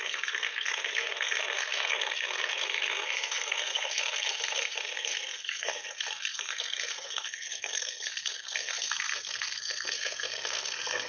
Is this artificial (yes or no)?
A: yes